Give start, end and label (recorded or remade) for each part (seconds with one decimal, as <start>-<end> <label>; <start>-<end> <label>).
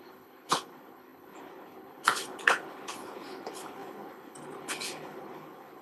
0.0-5.8 remade